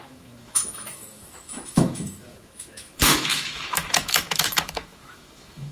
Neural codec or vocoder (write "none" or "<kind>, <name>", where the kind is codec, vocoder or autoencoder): autoencoder, DAC-VAE